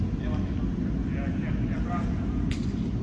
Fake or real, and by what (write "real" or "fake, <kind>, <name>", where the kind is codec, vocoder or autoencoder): real